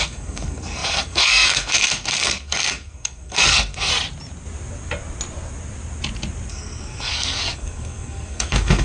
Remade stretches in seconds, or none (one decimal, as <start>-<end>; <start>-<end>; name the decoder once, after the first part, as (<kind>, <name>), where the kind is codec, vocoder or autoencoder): 0.0-3.9 (codec, SNAC); 6.5-8.8